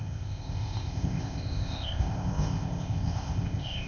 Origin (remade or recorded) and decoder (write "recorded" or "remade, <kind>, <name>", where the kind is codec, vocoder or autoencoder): remade, codec, ZipCodec